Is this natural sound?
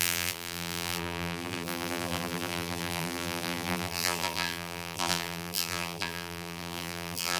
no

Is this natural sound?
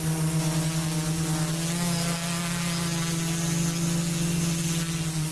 yes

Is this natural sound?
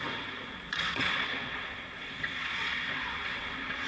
no